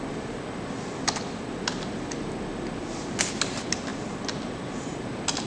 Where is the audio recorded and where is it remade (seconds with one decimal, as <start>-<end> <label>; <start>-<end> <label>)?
0.0-5.5 recorded